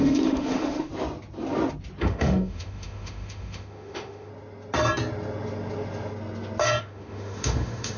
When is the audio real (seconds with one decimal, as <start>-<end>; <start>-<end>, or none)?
0.9-2.0; 4.3-6.8